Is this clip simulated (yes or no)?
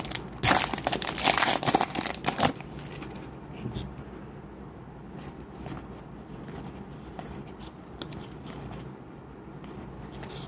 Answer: no